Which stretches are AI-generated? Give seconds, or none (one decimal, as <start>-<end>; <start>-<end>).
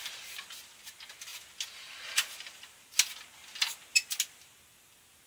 none